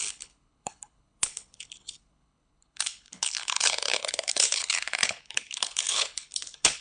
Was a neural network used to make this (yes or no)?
yes